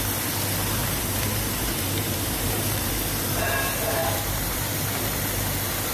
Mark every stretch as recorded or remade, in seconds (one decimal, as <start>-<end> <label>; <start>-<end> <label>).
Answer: 0.0-0.8 recorded; 0.8-2.9 remade; 2.9-4.0 recorded; 4.0-4.7 remade; 4.7-5.9 recorded